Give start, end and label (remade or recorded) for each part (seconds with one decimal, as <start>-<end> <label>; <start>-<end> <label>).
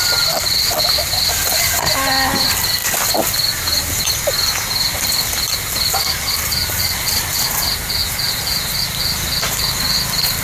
0.0-10.4 recorded